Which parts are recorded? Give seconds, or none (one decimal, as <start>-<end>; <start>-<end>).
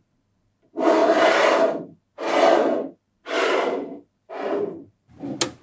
0.0-5.6